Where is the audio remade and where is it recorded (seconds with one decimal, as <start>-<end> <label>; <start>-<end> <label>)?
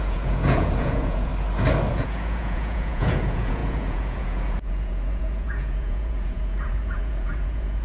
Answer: 0.0-1.3 remade; 1.3-1.9 recorded; 1.9-7.8 remade